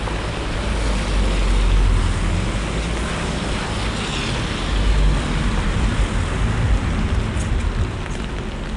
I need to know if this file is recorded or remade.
recorded